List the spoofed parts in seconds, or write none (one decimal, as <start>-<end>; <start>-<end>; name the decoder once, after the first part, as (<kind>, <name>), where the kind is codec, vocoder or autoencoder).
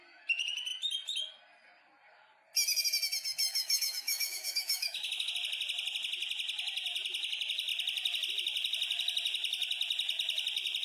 3.5-5.3 (autoencoder, DAC-VAE)